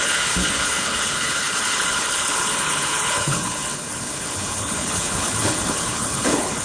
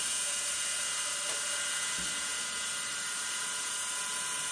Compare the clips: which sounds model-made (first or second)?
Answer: first